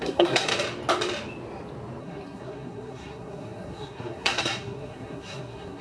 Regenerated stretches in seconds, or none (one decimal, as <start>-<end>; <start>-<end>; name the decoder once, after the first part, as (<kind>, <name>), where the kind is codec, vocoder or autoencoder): 0.0-0.5 (codec, SNAC); 2.0-5.8